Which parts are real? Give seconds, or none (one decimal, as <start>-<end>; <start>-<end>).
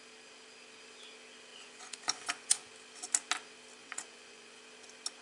0.0-1.5; 2.7-3.8; 4.6-5.2